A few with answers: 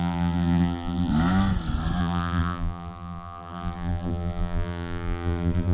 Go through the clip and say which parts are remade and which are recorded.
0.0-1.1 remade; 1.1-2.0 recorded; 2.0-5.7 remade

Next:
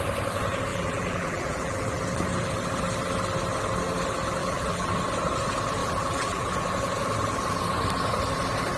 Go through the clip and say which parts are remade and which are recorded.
0.0-0.7 recorded; 0.7-2.0 remade; 2.0-4.4 recorded; 4.4-4.9 remade; 4.9-5.8 recorded; 5.8-6.5 remade; 6.5-8.8 recorded

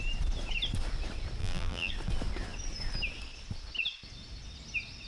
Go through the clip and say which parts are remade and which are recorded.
0.0-1.4 recorded; 1.4-1.9 remade; 1.9-5.1 recorded

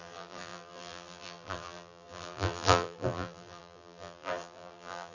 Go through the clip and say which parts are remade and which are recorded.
0.0-5.1 remade

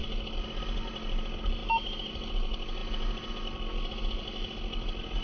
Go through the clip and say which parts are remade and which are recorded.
0.0-5.2 recorded